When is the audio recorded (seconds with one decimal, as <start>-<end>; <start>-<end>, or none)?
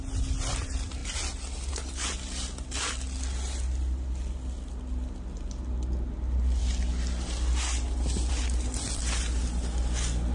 0.0-10.3